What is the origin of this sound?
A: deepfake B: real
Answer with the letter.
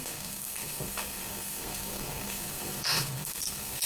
A